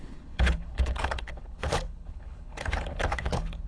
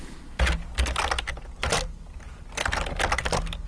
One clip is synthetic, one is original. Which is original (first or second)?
second